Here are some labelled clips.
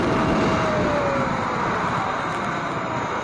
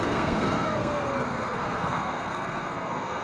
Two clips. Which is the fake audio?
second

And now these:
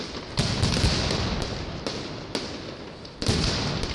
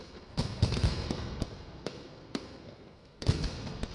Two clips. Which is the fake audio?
second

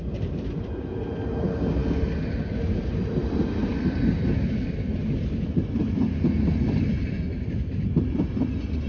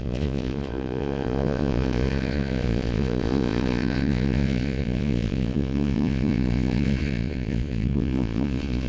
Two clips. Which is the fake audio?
second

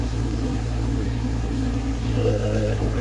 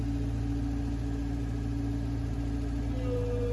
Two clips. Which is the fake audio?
first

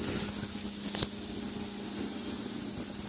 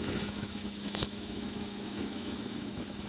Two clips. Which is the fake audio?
second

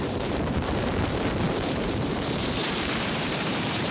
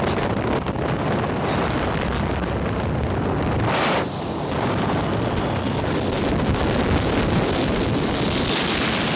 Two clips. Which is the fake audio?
first